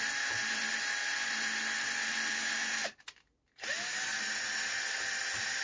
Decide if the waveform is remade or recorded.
recorded